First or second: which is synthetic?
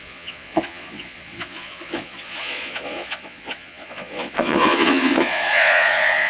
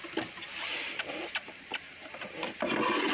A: first